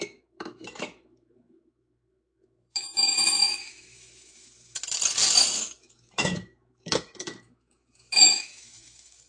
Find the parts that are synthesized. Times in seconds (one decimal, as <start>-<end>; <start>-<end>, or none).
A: 0.0-4.8; 5.6-9.3